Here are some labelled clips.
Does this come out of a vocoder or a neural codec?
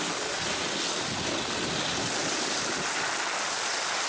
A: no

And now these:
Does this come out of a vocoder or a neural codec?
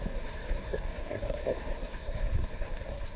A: yes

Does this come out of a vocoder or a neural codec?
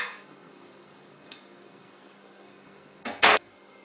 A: yes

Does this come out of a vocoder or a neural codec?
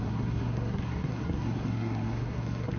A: yes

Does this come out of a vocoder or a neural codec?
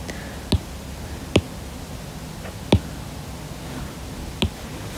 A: no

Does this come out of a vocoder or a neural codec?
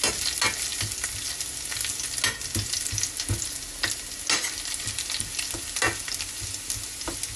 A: no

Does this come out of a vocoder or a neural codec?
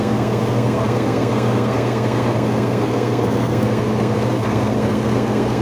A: yes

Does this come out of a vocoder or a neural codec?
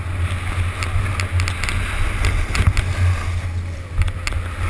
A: no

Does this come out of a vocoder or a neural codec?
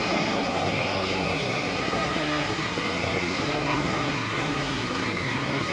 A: yes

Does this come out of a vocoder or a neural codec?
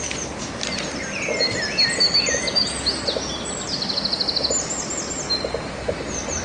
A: no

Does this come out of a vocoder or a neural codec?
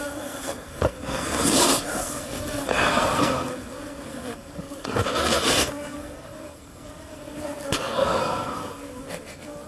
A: yes